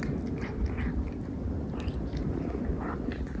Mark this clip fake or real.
real